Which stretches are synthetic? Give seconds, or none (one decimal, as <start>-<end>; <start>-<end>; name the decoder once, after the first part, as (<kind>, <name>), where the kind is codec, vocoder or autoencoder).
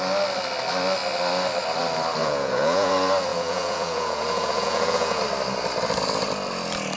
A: 2.2-2.9 (vocoder, Vocos); 3.3-5.2